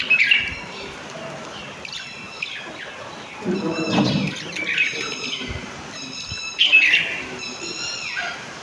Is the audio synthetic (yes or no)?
yes